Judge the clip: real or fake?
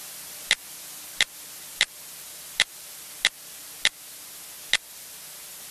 real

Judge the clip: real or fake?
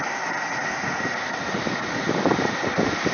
real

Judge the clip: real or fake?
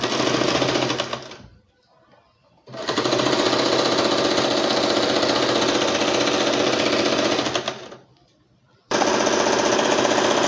real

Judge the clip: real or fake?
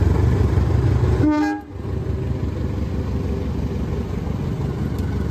real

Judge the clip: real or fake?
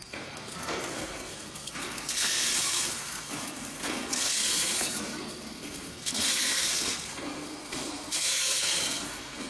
fake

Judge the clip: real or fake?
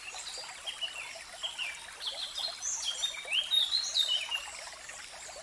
real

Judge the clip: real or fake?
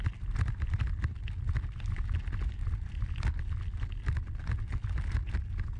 real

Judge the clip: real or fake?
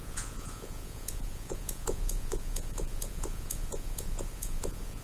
fake